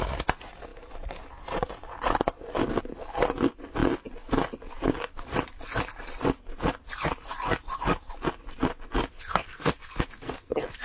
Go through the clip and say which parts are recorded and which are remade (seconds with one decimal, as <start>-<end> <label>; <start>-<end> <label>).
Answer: 0.0-9.1 recorded; 9.1-10.8 remade